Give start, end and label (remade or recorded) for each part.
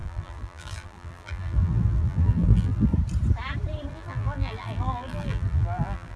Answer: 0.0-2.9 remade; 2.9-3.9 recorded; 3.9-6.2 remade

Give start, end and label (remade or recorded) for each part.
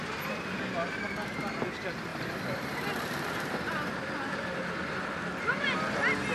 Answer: 0.0-2.1 recorded; 2.1-3.9 remade; 3.9-6.3 recorded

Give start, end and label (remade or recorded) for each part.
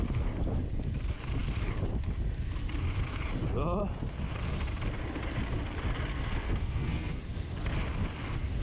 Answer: 0.0-6.1 recorded; 6.1-7.2 remade; 7.2-8.6 recorded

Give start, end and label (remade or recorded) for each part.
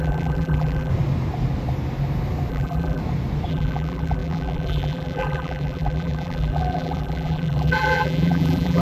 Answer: 0.0-0.9 remade; 0.9-2.5 recorded; 2.5-3.0 remade; 3.0-3.5 recorded; 3.5-8.8 remade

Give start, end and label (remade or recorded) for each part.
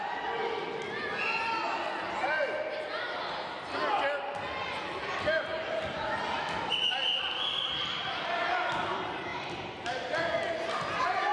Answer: 0.0-0.4 remade; 0.4-4.5 recorded; 4.5-11.3 remade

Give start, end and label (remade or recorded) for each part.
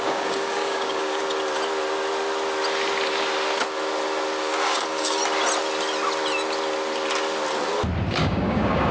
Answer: 0.0-1.2 remade; 1.2-4.4 recorded; 4.4-5.2 remade; 5.2-8.1 recorded; 8.1-8.9 remade